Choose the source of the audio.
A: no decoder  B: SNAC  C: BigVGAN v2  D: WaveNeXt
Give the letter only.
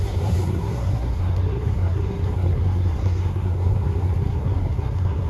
B